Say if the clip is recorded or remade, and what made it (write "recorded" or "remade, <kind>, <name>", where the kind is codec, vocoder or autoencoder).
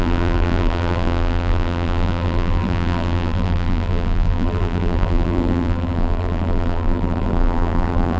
remade, vocoder, BigVGAN v2